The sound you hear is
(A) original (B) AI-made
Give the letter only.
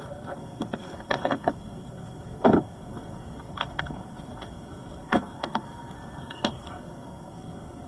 B